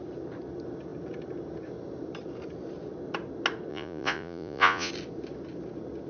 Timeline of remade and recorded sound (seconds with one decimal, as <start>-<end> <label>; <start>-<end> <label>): 0.0-3.7 recorded; 3.7-4.9 remade; 4.9-6.1 recorded